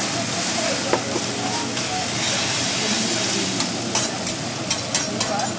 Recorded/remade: recorded